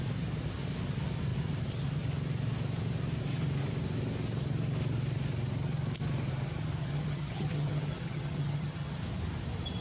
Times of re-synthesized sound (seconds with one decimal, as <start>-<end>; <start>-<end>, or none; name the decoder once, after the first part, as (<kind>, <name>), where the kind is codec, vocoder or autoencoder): 6.8-8.9 (vocoder, HiFi-GAN)

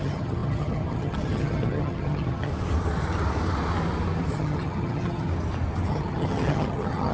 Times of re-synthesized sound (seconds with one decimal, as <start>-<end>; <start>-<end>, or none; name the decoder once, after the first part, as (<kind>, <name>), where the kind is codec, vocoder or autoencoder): 0.0-2.5 (vocoder, HiFi-GAN); 4.3-5.3; 5.9-7.1

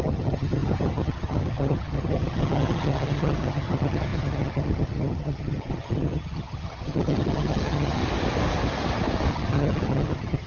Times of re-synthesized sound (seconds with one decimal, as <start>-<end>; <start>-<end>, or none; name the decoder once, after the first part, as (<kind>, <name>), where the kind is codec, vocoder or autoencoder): 0.0-8.0 (vocoder, HiFi-GAN); 9.3-10.5

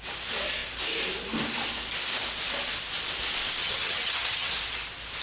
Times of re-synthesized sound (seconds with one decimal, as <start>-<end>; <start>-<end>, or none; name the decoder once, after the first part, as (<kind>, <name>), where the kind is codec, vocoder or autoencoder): 3.6-4.5 (vocoder, HiFi-GAN)

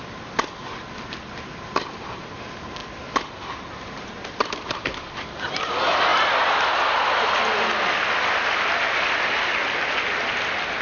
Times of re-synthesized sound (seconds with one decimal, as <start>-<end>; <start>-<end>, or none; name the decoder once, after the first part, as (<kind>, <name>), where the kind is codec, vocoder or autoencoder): none